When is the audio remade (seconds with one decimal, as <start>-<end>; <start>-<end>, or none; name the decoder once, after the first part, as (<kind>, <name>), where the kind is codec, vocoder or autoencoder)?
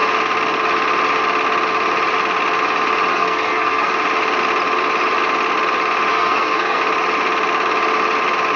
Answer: 3.1-3.9 (codec, SNAC); 6.1-6.8